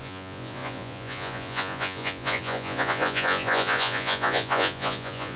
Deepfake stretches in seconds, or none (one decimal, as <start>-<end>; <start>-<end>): 0.0-5.4